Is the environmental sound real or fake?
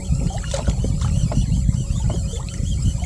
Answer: real